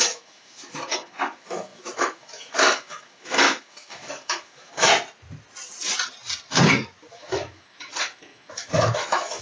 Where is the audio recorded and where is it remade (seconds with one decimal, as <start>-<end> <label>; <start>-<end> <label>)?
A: 0.0-4.9 remade; 4.9-7.1 recorded; 7.1-9.4 remade